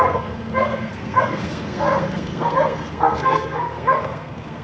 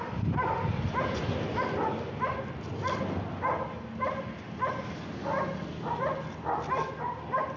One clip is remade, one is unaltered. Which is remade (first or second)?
first